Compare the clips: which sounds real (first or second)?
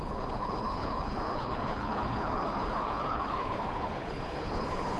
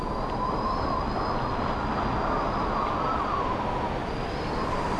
second